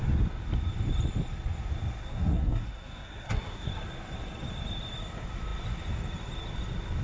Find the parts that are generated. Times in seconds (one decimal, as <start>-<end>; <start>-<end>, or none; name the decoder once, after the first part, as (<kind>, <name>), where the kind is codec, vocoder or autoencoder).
2.0-3.7 (codec, SNAC)